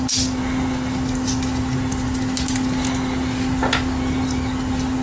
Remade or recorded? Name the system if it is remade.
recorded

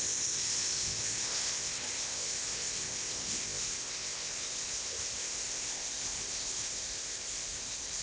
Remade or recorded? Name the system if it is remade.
remade, codec, ZipCodec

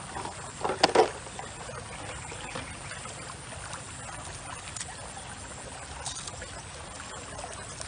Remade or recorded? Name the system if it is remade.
recorded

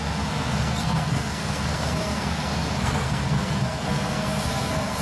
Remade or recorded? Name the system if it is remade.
remade, codec, SNAC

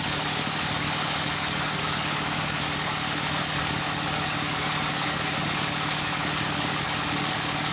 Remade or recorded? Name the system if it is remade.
remade, codec, DAC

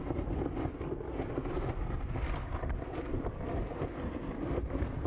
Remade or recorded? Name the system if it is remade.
recorded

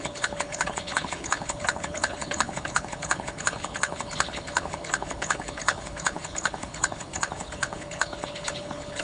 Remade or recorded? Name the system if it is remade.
remade, codec, HILCodec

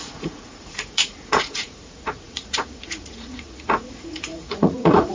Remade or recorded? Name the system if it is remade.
remade, vocoder, Vocos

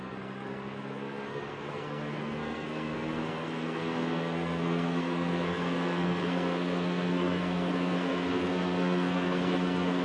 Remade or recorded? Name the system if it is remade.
remade, codec, SNAC